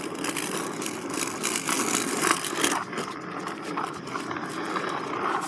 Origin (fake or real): real